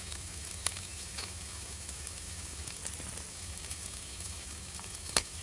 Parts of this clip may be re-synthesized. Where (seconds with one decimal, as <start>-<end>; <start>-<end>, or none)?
0.0-2.8; 3.3-5.4